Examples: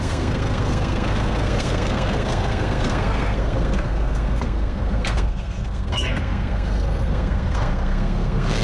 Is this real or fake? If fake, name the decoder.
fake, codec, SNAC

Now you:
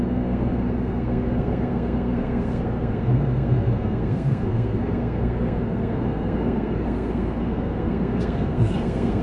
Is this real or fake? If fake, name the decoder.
fake, codec, SNAC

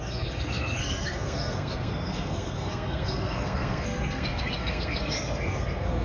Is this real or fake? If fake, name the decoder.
fake, codec, SNAC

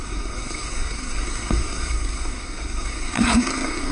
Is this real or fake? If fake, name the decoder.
fake, codec, SNAC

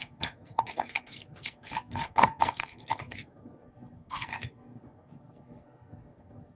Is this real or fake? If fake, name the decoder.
fake, codec, SNAC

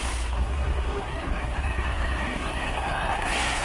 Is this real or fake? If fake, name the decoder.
fake, codec, SNAC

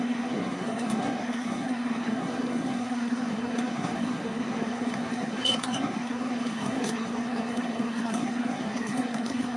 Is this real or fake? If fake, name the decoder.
fake, codec, SNAC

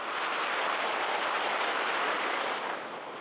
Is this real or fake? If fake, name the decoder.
real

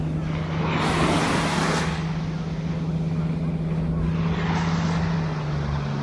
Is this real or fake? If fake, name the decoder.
real